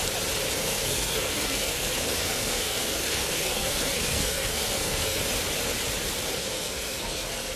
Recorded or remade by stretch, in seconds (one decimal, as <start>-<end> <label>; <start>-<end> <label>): 0.0-0.6 recorded; 0.6-5.2 remade; 5.2-6.4 recorded; 6.4-7.6 remade